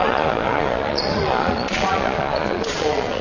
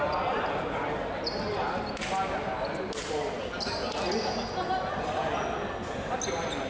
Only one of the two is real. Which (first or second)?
second